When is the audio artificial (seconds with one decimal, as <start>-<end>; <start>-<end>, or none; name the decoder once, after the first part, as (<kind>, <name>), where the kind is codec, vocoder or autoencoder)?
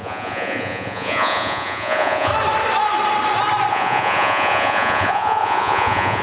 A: 0.0-2.3 (vocoder, Vocos); 3.7-6.2